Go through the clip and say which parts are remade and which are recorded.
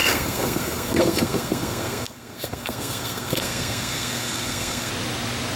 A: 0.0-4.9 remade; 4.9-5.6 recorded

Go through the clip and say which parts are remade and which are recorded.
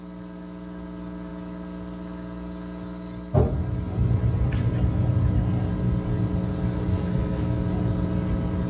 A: 0.0-6.9 recorded; 6.9-7.6 remade; 7.6-8.7 recorded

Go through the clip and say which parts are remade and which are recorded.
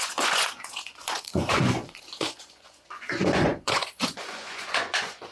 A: 0.0-5.3 remade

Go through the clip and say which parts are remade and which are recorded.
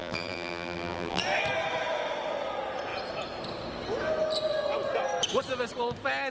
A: 0.0-1.2 remade; 1.2-6.3 recorded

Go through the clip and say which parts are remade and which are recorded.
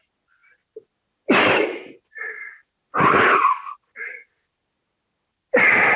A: 0.0-6.0 recorded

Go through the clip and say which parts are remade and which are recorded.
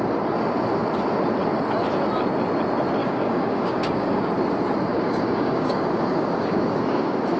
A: 0.0-3.0 recorded; 3.0-4.3 remade; 4.3-4.9 recorded; 4.9-7.4 remade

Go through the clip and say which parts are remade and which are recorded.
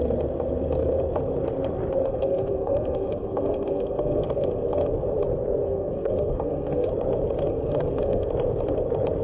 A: 0.0-2.0 recorded; 2.0-4.9 remade; 4.9-5.6 recorded; 5.6-6.9 remade; 6.9-7.5 recorded; 7.5-8.3 remade; 8.3-9.2 recorded